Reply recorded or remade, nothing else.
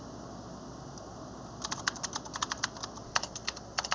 recorded